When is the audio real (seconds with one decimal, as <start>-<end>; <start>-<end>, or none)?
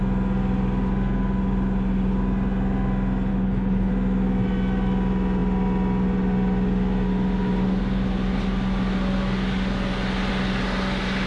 0.0-3.3; 3.9-11.3